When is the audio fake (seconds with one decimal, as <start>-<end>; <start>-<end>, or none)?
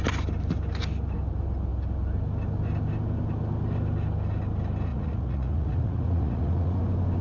4.9-6.8